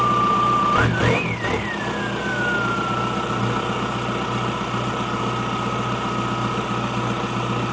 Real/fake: real